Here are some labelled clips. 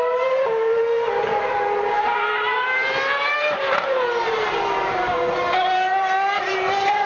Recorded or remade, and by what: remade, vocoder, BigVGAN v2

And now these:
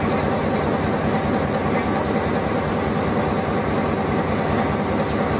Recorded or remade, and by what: recorded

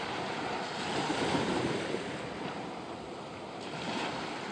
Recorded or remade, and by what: remade, vocoder, BigVGAN v2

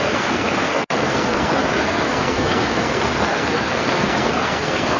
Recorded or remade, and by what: remade, codec, SNAC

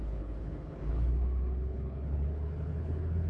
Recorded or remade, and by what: remade, codec, HILCodec